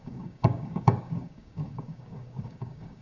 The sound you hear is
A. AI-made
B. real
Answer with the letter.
A